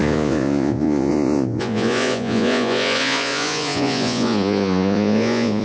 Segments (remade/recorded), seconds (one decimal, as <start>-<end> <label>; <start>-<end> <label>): 0.0-5.6 remade